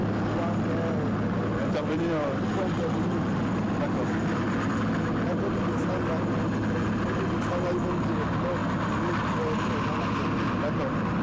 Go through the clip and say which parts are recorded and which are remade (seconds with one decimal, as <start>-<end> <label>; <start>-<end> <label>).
0.0-11.2 recorded